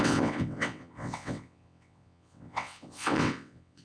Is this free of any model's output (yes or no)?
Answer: no